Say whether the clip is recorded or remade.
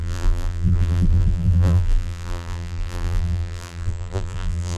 remade